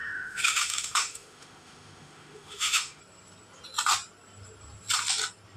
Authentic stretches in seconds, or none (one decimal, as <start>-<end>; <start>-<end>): 3.0-5.6